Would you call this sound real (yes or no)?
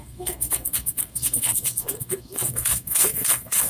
no